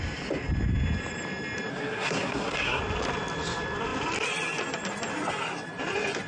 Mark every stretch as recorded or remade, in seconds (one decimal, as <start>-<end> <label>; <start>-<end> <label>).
0.0-1.7 recorded; 1.7-2.8 remade; 2.8-6.3 recorded